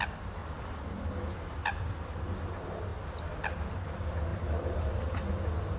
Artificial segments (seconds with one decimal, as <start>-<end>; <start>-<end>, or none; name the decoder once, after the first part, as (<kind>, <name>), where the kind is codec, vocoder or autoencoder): 4.3-5.3 (vocoder, BigVGAN v2)